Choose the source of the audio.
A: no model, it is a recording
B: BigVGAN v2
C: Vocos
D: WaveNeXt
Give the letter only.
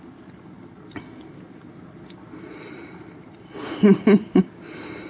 A